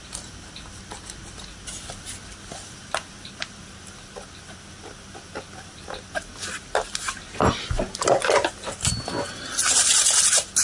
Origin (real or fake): real